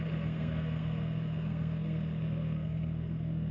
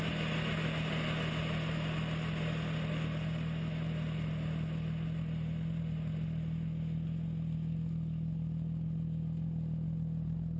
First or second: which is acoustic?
second